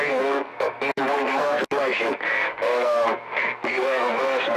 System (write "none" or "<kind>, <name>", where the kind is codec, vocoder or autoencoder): codec, SNAC